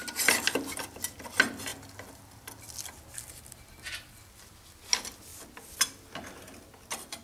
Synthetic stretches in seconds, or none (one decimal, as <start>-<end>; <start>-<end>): none